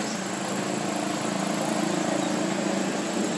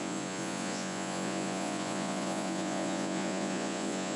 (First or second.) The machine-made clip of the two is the second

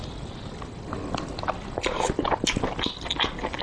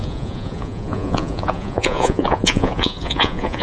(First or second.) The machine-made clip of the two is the second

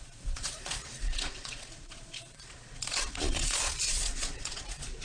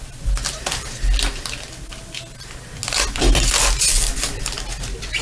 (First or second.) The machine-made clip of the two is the first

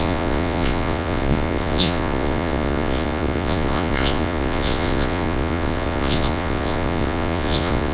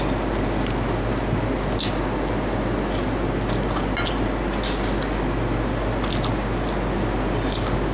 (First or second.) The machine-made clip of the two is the first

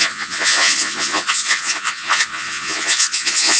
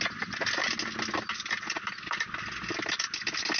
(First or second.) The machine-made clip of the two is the first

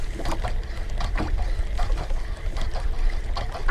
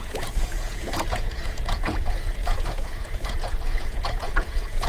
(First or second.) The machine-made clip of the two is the second